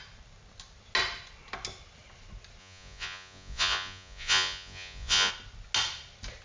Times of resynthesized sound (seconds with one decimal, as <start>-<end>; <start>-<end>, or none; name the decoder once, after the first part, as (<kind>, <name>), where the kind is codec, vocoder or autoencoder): 2.6-5.3 (vocoder, Vocos)